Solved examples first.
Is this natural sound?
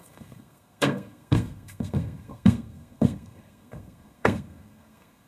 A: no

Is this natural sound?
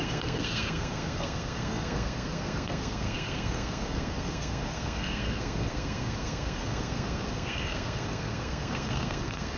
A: no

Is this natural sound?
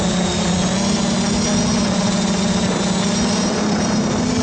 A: yes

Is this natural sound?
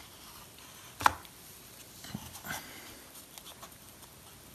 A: yes